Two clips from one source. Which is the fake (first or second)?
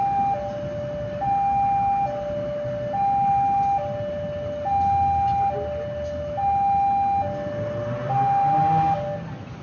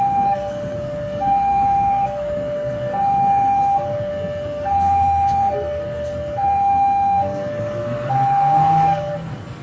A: second